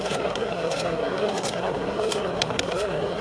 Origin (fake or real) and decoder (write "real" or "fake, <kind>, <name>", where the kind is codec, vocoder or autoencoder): fake, codec, SNAC